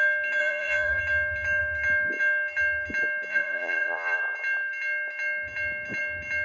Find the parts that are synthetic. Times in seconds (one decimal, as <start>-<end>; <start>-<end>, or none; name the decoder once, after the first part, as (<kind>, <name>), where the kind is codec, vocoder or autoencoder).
0.4-1.0 (vocoder, Vocos); 3.3-4.2